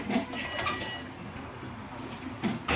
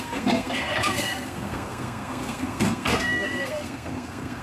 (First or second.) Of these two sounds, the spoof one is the second